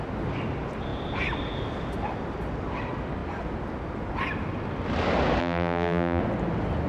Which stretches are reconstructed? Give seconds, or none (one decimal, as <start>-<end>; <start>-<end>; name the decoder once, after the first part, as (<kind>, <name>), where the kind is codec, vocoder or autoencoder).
5.4-6.2 (vocoder, BigVGAN v2)